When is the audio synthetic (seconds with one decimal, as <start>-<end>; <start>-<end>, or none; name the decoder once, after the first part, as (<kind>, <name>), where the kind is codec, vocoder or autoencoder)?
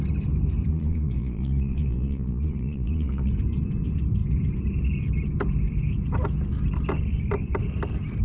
0.7-3.3 (vocoder, Vocos)